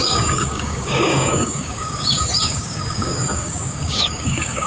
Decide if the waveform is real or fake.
fake